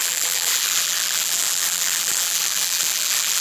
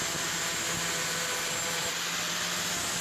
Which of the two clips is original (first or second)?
second